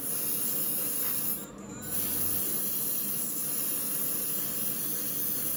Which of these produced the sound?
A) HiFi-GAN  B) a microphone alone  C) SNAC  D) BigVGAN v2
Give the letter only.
B